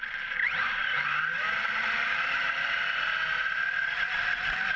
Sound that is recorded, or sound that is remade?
recorded